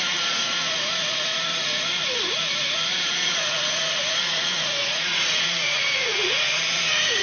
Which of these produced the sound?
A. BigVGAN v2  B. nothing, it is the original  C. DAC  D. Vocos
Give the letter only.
D